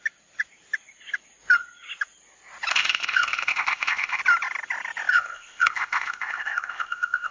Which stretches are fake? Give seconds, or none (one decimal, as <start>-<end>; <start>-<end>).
2.7-4.2; 5.1-7.3